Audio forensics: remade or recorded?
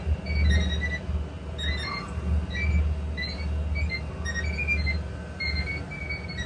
recorded